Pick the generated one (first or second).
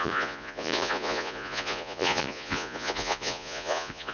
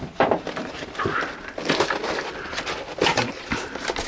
first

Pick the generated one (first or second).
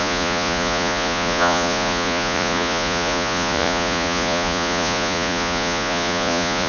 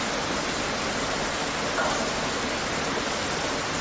first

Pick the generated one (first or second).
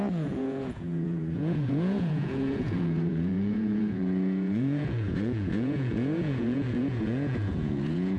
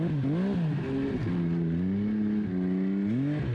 first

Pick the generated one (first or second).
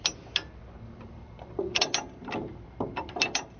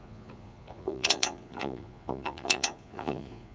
second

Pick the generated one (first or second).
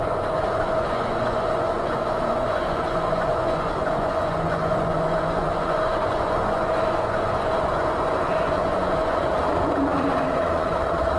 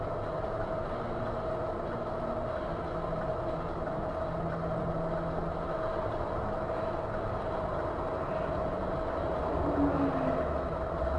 first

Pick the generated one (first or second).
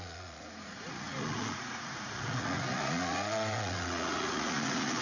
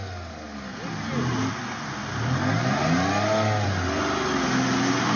first